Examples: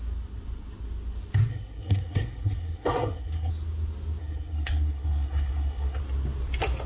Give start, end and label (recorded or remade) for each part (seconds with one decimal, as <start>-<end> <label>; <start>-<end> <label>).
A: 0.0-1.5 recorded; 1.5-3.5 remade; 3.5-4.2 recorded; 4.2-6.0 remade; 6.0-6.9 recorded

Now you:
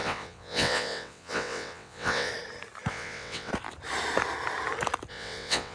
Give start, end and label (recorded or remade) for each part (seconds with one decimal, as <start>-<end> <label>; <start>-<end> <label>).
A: 0.0-2.3 remade; 2.3-2.9 recorded; 2.9-3.5 remade; 3.5-5.1 recorded; 5.1-5.7 remade

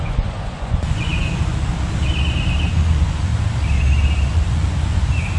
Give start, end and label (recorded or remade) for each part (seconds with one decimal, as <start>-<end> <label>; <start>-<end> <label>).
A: 0.0-1.7 remade; 1.7-2.7 recorded; 2.7-3.3 remade; 3.3-4.2 recorded; 4.2-5.4 remade

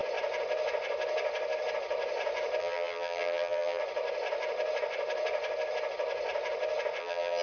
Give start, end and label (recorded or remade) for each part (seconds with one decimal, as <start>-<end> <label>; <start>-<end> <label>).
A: 0.0-2.6 recorded; 2.6-3.8 remade; 3.8-7.0 recorded; 7.0-7.4 remade

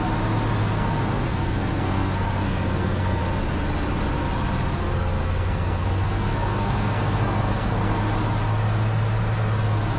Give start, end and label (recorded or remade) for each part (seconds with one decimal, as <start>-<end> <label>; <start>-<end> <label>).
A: 0.0-0.6 recorded; 0.6-3.2 remade; 3.2-5.2 recorded; 5.2-8.0 remade; 8.0-10.0 recorded